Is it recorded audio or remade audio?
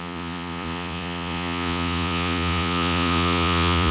remade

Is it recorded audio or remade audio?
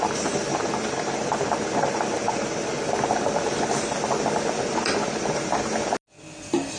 recorded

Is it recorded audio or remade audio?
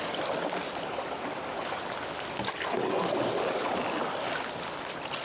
recorded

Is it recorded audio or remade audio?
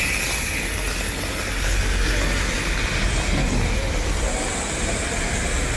recorded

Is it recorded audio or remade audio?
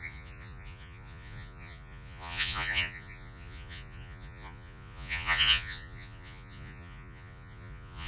remade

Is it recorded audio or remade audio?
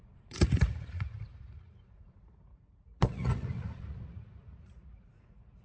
remade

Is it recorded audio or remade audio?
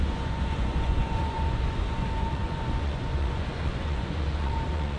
remade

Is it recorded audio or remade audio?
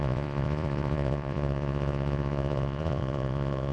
remade